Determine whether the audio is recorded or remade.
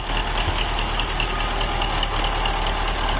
recorded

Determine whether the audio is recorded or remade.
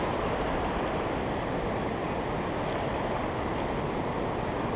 recorded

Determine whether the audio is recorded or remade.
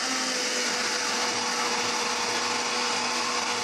recorded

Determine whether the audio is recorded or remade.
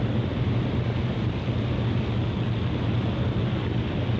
recorded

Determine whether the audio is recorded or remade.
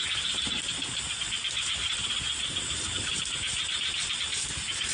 recorded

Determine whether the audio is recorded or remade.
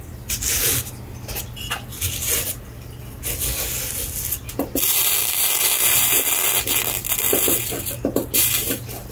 recorded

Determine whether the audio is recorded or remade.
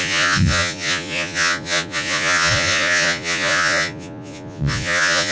remade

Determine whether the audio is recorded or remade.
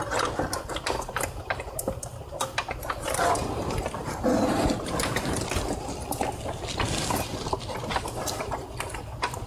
remade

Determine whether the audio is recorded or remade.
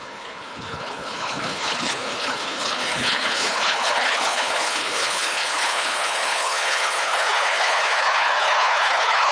remade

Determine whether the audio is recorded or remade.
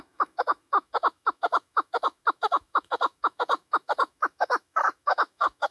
remade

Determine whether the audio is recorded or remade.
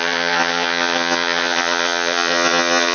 remade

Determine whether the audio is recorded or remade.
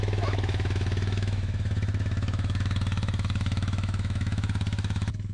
remade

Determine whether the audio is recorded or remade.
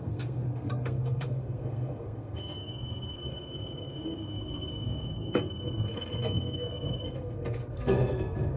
remade